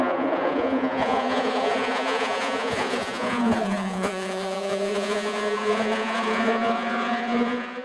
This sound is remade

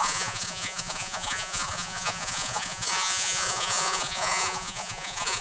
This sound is remade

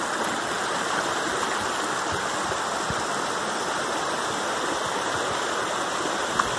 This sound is recorded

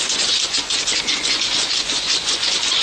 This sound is remade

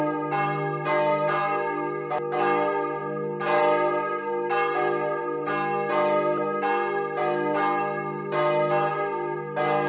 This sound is recorded